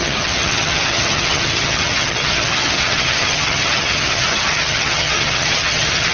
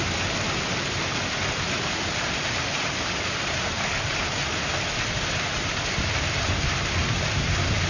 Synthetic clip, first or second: first